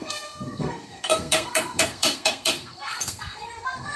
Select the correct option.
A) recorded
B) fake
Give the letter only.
B